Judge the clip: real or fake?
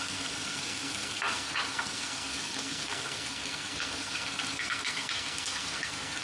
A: fake